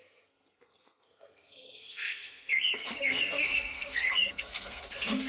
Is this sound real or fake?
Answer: fake